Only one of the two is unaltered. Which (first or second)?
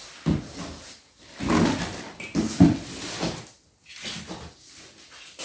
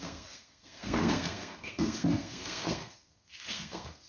first